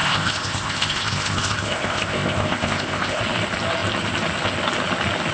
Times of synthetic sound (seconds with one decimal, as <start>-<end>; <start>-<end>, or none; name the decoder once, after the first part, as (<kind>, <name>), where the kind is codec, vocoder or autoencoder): 0.0-3.2 (codec, ZipCodec)